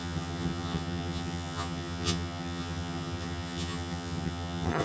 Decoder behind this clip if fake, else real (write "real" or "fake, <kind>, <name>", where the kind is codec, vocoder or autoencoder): fake, vocoder, HiFi-GAN